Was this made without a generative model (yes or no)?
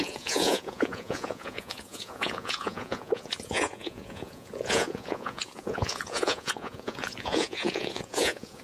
no